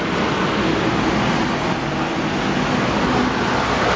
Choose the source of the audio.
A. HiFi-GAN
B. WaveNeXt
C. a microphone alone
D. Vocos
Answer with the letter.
C